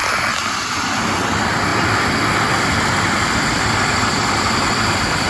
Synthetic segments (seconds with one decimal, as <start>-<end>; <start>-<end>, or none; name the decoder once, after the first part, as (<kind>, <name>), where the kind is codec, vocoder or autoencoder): none